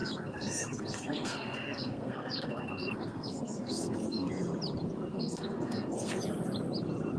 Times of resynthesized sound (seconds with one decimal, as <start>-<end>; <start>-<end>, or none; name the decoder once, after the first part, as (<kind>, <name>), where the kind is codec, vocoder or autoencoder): 0.0-4.3 (codec, SNAC); 5.1-6.2